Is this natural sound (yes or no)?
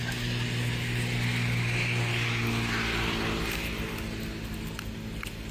yes